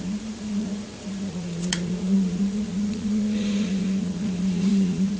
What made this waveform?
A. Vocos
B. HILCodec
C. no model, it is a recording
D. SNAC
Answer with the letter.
A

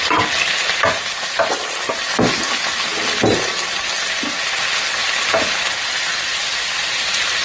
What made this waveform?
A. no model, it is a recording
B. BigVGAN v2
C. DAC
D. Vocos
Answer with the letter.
A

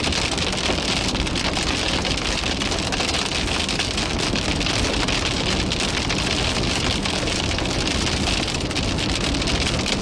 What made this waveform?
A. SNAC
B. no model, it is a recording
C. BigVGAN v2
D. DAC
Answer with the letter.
B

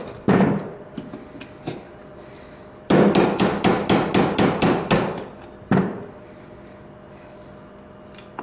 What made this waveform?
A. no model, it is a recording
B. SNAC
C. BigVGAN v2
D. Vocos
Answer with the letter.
A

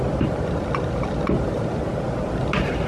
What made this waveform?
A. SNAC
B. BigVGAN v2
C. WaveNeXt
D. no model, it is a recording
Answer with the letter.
D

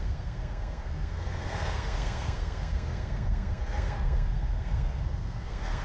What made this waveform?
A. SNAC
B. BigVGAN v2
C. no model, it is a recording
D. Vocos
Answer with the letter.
A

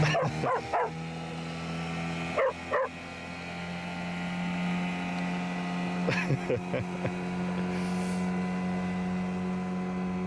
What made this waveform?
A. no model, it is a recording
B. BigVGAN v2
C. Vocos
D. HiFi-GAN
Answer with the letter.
A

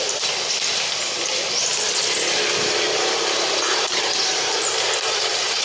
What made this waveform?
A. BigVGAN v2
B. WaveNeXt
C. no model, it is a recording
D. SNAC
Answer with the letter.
C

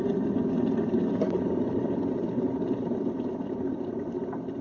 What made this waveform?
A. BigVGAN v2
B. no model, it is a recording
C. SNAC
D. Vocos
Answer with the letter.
B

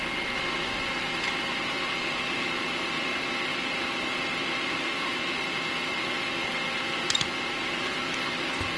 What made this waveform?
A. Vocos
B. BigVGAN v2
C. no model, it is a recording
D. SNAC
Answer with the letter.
C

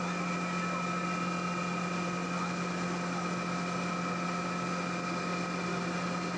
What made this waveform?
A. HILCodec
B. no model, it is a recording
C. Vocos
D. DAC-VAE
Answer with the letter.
B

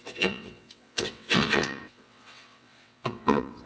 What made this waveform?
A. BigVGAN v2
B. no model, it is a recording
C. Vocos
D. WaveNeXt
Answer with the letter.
D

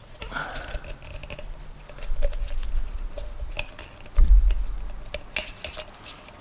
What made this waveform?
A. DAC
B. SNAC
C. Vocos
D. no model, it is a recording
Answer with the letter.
D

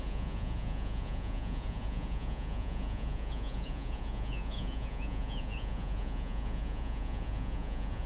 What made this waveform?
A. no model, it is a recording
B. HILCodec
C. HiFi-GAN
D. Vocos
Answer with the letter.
D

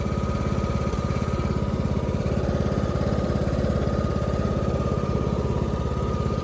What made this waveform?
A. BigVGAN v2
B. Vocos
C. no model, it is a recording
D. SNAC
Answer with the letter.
A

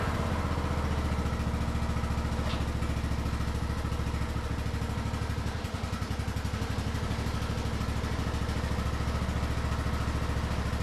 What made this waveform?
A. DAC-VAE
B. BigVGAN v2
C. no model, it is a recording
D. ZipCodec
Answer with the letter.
C